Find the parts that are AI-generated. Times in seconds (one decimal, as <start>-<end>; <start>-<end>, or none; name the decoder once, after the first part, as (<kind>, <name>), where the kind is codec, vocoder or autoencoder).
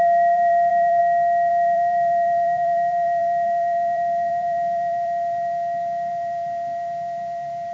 0.0-1.0 (vocoder, BigVGAN v2); 1.5-7.7